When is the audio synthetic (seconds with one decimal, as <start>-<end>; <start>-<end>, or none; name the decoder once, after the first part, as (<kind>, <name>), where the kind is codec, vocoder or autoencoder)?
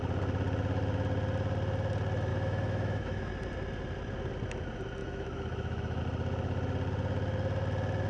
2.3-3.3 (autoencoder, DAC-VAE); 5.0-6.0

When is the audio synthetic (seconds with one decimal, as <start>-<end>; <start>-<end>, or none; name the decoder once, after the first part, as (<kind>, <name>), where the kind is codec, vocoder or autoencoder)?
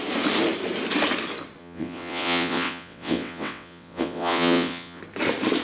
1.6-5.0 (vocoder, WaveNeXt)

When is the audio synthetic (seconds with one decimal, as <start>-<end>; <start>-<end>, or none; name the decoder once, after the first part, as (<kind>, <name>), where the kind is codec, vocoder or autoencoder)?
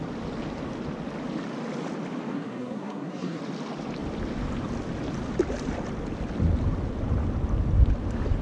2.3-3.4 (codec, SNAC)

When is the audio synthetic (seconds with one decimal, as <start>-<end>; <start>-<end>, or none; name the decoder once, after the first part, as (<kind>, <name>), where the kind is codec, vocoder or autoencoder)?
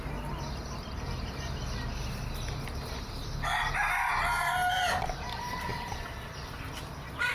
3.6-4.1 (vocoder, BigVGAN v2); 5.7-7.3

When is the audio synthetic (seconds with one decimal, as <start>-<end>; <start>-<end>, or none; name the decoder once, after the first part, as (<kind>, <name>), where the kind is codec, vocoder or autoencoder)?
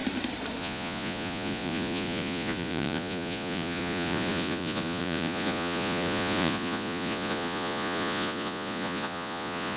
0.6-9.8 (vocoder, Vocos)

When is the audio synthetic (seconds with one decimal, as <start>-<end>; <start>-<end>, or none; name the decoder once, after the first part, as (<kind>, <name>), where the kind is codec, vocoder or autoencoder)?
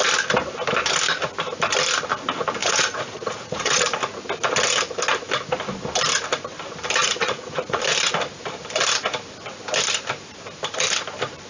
2.6-3.8 (vocoder, Vocos); 7.0-7.8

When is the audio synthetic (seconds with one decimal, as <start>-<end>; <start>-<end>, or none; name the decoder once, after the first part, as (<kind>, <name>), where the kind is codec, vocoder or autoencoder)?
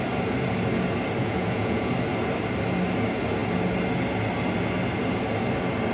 1.2-1.9 (vocoder, Vocos)